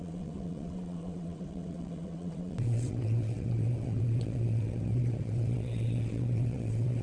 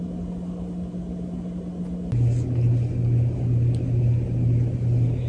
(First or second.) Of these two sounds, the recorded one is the second